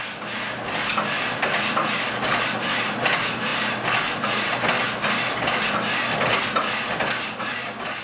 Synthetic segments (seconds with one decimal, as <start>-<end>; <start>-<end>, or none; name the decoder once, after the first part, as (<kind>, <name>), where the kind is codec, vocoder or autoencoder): none